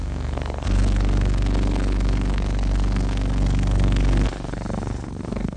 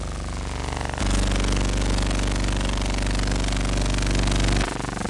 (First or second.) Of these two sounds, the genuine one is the second